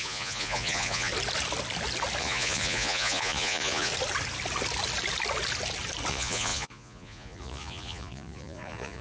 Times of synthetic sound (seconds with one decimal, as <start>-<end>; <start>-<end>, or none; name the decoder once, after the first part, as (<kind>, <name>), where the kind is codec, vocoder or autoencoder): 0.0-1.1 (vocoder, Vocos); 2.2-3.9; 6.1-9.0